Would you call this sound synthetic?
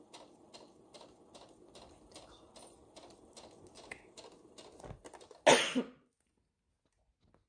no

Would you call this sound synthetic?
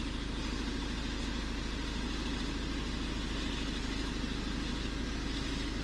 no